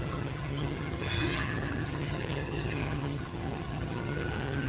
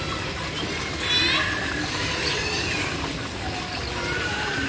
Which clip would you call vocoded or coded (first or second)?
first